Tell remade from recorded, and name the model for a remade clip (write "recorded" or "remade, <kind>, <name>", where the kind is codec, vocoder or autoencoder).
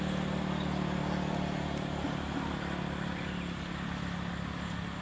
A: recorded